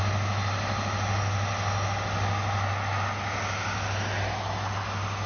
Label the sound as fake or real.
real